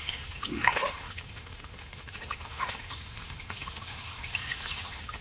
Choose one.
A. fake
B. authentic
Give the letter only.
A